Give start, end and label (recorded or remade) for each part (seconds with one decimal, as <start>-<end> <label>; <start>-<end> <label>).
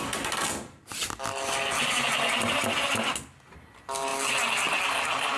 0.0-5.4 recorded